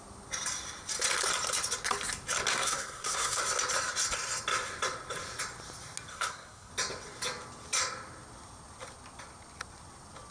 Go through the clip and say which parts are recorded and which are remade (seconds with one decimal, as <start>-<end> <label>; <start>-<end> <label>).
0.0-2.5 recorded; 2.5-3.4 remade; 3.4-6.1 recorded; 6.1-6.7 remade; 6.7-10.3 recorded